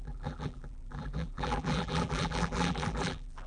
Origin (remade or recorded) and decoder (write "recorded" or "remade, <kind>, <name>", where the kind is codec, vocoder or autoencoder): remade, vocoder, BigVGAN v2